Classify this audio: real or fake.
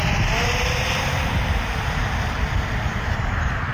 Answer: fake